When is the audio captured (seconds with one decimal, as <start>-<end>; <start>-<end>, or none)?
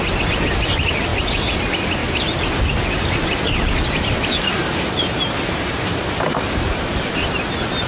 0.0-4.5; 7.4-7.9